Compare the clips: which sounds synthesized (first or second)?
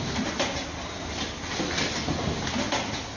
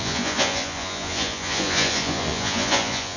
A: second